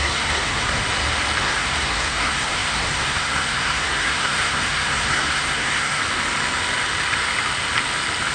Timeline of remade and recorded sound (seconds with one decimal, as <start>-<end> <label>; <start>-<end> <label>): 0.0-0.8 remade; 0.8-1.4 recorded; 1.4-6.0 remade; 6.0-8.3 recorded